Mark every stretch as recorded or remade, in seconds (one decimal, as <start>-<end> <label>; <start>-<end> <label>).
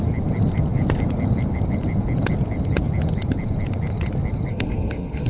0.0-4.5 recorded; 4.5-5.3 remade